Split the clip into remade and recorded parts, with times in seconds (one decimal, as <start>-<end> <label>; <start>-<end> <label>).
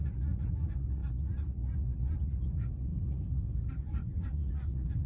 0.0-5.1 remade